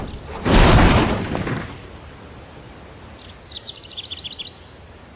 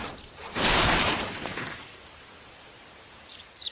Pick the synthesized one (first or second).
second